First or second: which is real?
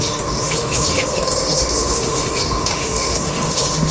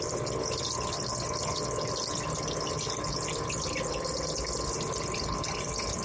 second